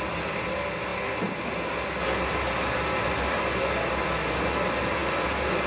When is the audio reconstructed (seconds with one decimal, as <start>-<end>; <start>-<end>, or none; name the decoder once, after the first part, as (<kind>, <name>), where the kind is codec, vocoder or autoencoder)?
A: none

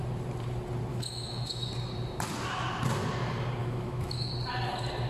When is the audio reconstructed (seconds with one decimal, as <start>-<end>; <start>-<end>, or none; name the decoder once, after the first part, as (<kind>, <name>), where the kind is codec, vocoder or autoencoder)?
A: 0.9-1.7 (autoencoder, DAC-VAE); 3.6-4.3